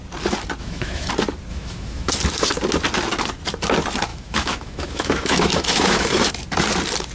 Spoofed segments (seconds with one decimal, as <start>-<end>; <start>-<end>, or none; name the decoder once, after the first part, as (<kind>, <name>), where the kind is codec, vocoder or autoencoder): 0.6-1.1 (autoencoder, DAC-VAE); 1.5-2.1; 4.1-6.3